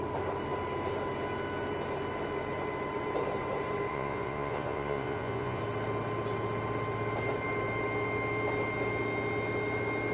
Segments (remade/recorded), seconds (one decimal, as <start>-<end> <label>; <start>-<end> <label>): 0.0-3.9 recorded; 3.9-5.6 remade; 5.6-10.1 recorded